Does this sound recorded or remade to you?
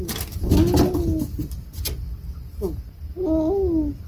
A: recorded